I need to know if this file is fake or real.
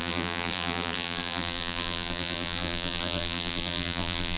fake